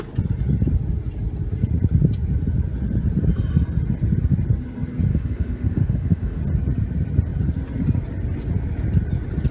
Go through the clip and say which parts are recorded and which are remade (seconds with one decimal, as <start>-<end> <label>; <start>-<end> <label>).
0.0-5.1 recorded; 5.1-6.4 remade; 6.4-9.5 recorded